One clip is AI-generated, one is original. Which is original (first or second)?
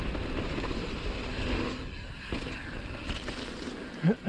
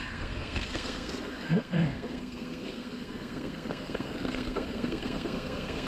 first